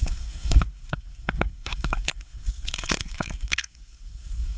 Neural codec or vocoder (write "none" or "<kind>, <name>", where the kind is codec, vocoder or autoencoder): codec, SNAC